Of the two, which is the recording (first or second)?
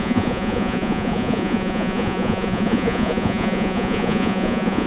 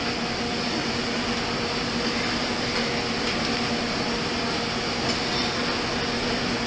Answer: second